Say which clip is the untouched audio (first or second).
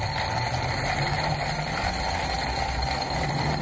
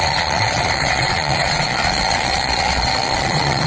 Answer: first